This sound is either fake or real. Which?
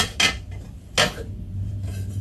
real